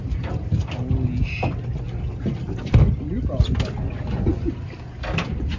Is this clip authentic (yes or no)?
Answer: yes